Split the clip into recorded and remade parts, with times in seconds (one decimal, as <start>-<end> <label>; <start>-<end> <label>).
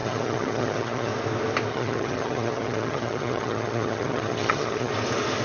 0.0-1.1 remade; 1.1-1.7 recorded; 1.7-4.9 remade; 4.9-5.4 recorded